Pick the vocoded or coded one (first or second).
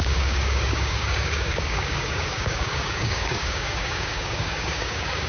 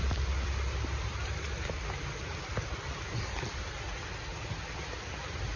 first